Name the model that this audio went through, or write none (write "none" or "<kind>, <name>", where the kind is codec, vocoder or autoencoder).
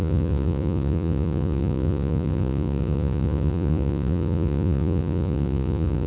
vocoder, Vocos